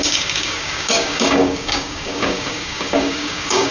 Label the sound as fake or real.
fake